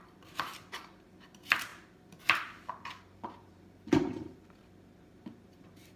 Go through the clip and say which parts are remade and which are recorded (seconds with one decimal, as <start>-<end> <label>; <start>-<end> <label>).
0.0-6.0 remade